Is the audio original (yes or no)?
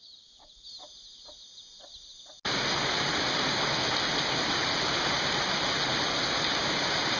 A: yes